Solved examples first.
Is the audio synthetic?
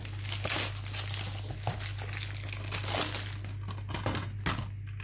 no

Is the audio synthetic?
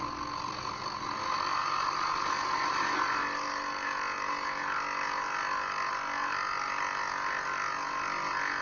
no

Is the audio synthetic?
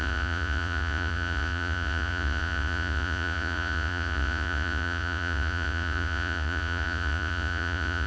yes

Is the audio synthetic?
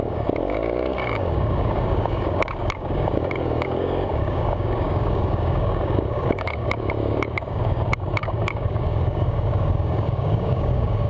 yes